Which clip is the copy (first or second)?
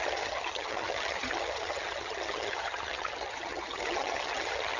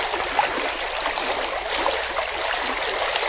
first